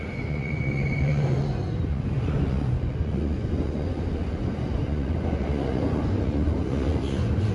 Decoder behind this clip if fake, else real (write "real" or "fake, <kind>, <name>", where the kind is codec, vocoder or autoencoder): fake, vocoder, Vocos